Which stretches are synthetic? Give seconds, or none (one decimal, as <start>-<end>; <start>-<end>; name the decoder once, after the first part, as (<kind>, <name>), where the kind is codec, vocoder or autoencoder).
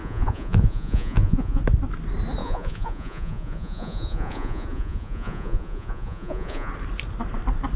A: 0.0-1.6 (vocoder, Vocos); 2.4-6.7